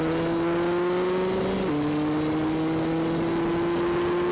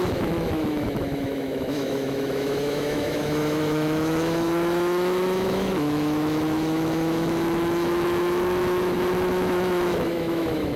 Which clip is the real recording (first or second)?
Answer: first